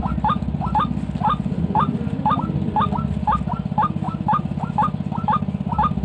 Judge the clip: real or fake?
real